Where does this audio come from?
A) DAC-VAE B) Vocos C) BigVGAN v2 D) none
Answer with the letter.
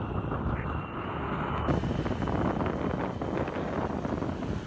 D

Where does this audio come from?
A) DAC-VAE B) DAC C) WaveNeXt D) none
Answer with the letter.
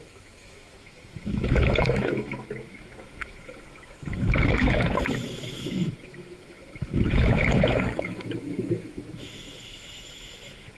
A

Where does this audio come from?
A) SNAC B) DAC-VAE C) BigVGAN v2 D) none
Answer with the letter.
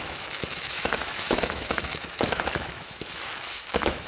B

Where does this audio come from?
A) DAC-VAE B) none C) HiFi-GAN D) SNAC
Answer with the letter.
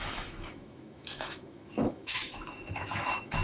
A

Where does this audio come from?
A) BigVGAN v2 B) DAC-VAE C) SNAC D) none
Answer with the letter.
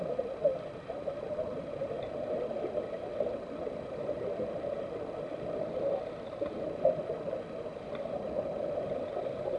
D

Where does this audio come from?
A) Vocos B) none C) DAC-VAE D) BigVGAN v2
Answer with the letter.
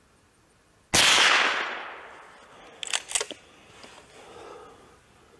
B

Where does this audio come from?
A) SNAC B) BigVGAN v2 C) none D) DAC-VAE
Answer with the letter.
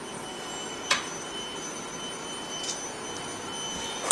C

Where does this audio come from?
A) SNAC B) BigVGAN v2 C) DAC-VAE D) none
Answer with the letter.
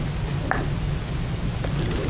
D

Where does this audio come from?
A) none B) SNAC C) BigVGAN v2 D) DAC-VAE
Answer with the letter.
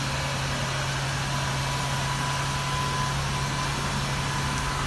A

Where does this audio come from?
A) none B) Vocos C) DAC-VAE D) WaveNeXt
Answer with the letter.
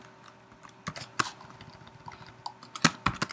A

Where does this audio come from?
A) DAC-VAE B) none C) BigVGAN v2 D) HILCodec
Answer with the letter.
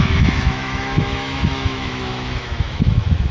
A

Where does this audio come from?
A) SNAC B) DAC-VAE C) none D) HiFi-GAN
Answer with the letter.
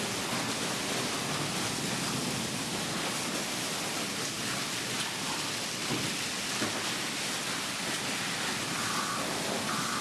C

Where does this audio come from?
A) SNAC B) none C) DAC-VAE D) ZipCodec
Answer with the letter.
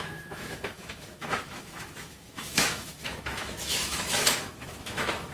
C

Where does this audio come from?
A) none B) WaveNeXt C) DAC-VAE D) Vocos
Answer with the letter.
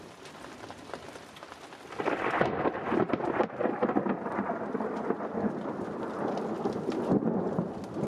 A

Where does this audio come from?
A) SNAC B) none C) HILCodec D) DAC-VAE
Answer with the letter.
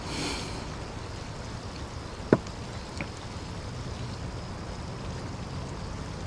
B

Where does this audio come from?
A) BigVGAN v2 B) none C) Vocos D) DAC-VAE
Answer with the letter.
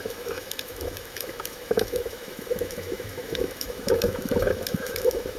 D